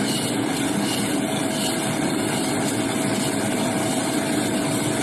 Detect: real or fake real